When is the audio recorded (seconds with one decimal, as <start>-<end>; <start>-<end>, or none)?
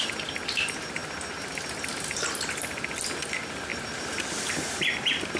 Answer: 0.0-3.7; 4.4-5.4